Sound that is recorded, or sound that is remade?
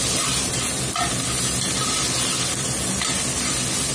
recorded